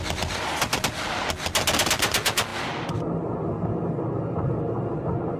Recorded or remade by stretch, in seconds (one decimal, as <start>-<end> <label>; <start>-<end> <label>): 0.0-5.4 recorded